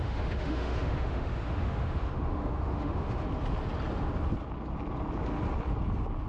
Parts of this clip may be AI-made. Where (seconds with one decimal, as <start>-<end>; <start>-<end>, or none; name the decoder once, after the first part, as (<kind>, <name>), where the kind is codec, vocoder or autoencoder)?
0.0-3.3 (autoencoder, DAC-VAE)